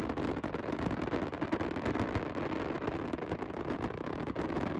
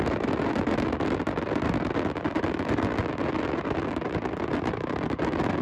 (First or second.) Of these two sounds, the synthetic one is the second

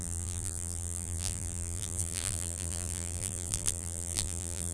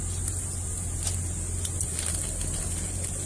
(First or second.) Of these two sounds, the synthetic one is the first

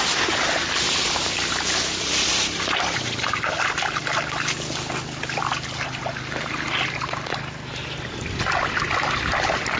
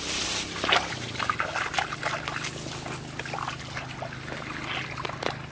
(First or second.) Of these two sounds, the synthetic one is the first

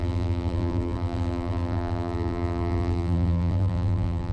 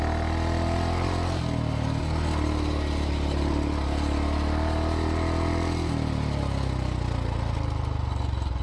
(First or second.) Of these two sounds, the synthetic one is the first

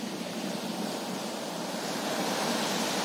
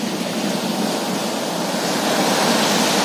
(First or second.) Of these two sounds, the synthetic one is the first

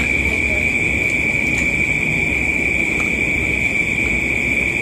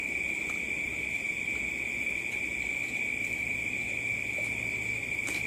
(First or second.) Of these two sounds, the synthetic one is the second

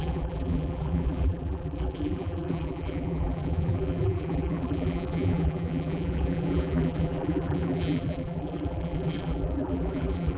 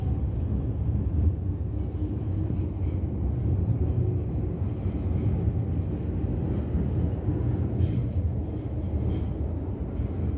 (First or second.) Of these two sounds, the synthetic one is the first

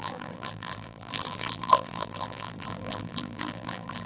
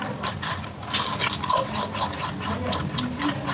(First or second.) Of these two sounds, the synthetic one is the first